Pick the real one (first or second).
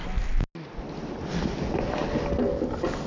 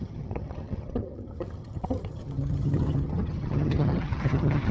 first